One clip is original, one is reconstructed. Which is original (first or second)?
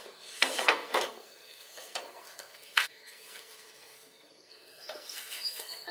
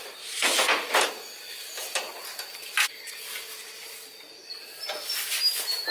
second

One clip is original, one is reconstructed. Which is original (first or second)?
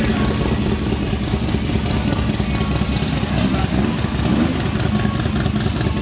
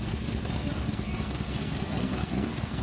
first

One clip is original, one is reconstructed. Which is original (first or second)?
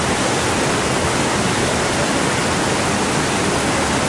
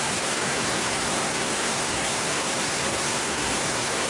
first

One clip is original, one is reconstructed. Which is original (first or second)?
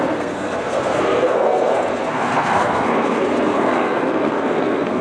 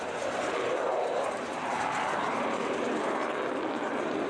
second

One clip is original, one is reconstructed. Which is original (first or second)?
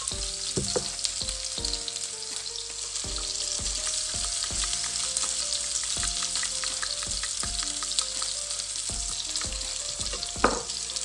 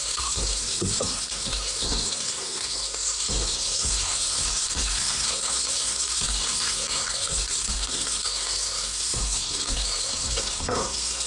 first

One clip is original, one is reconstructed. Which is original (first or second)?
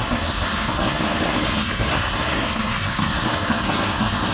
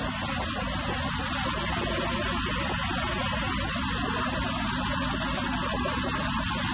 second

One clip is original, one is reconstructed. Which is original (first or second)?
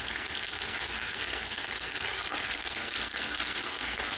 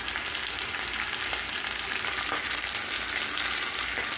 second